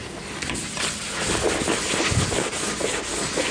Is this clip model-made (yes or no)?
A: no